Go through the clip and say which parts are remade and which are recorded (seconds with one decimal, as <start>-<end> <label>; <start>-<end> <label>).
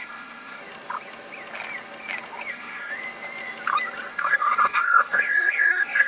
0.0-0.6 remade; 0.6-2.5 recorded; 2.5-2.9 remade; 2.9-4.1 recorded; 4.1-6.1 remade